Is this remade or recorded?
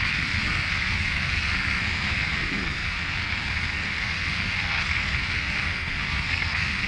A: remade